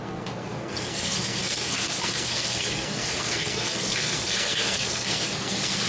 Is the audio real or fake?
fake